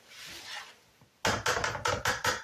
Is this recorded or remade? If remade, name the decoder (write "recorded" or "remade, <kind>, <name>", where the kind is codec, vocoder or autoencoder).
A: recorded